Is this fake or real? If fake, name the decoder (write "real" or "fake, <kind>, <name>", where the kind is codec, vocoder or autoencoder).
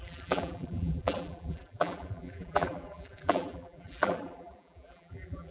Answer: fake, vocoder, BigVGAN v2